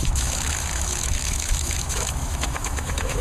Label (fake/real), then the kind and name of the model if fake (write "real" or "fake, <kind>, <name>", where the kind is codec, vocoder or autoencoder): fake, autoencoder, DAC-VAE